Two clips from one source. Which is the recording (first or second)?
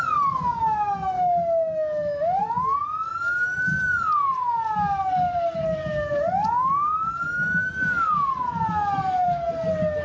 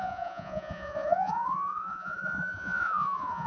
first